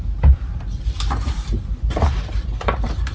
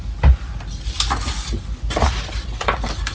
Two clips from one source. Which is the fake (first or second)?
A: first